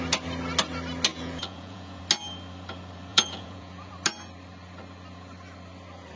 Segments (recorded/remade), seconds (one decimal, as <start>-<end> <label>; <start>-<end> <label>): 0.0-1.1 recorded; 1.1-2.0 remade; 2.0-3.1 recorded; 3.1-3.9 remade; 3.9-6.2 recorded